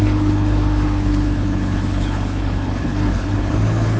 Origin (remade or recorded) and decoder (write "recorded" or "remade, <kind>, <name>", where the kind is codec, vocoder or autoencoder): remade, codec, HILCodec